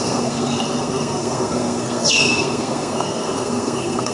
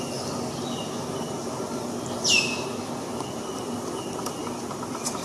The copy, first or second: first